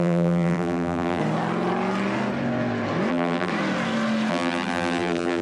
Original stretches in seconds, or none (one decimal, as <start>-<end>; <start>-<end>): 1.2-3.1; 3.5-4.3